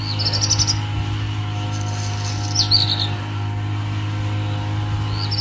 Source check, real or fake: real